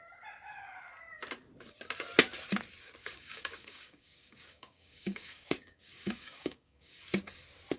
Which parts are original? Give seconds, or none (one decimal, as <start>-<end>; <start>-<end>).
0.0-3.0; 7.0-7.8